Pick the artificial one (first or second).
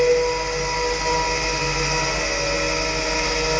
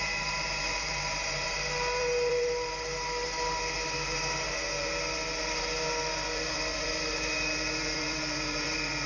second